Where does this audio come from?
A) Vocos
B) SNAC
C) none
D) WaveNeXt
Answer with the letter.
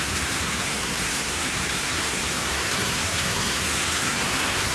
B